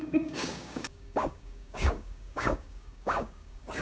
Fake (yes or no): yes